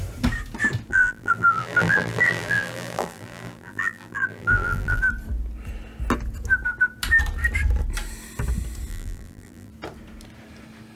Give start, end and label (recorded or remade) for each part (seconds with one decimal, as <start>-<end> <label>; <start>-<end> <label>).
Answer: 0.0-0.9 recorded; 0.9-5.0 remade; 5.0-8.9 recorded; 8.9-9.7 remade; 9.7-11.0 recorded